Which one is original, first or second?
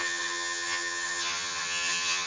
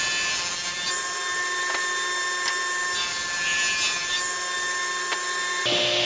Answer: second